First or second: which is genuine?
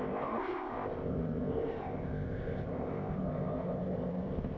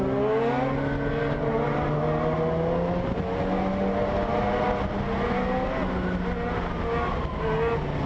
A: second